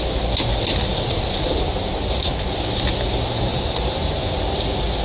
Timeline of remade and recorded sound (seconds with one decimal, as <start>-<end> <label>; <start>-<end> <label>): 0.0-3.5 recorded; 3.5-4.2 remade; 4.2-5.0 recorded